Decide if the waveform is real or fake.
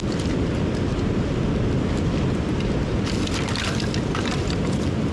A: real